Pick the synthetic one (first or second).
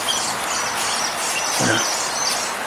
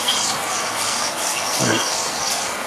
second